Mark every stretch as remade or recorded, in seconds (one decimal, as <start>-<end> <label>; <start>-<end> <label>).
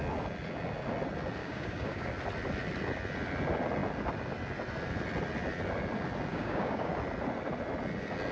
0.0-1.4 recorded; 1.4-2.1 remade; 2.1-6.3 recorded; 6.3-6.9 remade; 6.9-8.3 recorded